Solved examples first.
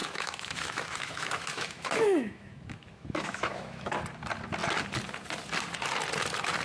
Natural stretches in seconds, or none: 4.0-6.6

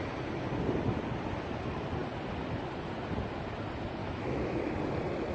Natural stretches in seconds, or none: 0.0-4.0; 4.8-5.3

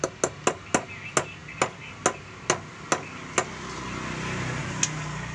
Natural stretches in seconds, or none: 0.0-5.3

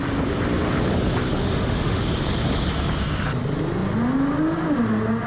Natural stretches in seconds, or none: 0.0-1.4; 2.0-5.3

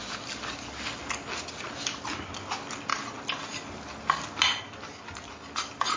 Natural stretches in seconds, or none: 0.0-6.0

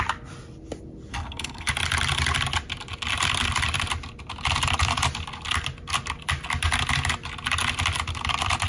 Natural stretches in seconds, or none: 0.0-1.1; 1.7-8.7